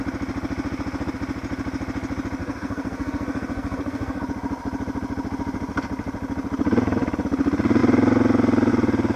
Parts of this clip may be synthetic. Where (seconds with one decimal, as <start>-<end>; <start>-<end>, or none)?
2.4-4.2